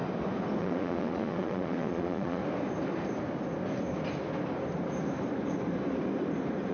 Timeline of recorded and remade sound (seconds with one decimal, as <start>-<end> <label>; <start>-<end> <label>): 0.0-0.6 recorded; 0.6-2.4 remade; 2.4-6.7 recorded